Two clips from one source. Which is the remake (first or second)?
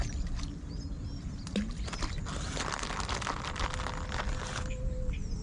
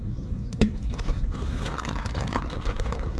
second